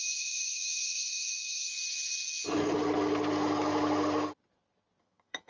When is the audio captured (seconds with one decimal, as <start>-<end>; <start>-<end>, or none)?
1.7-5.0